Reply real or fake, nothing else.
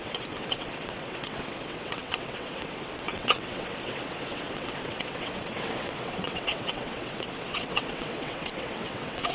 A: fake